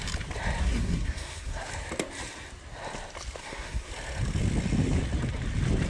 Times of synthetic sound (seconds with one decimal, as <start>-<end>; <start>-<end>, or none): 0.6-1.7; 3.4-3.9